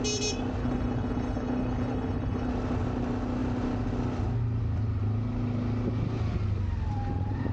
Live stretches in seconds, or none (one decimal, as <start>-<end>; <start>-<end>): 0.0-0.6; 2.5-7.5